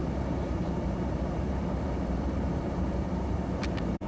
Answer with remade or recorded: remade